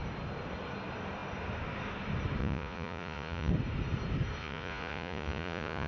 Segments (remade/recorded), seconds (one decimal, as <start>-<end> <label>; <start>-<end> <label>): 0.0-2.4 recorded; 2.4-3.5 remade; 3.5-4.4 recorded; 4.4-5.9 remade